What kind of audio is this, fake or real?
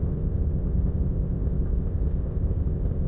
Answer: fake